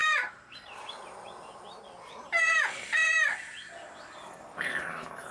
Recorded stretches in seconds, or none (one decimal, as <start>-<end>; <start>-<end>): 0.0-5.3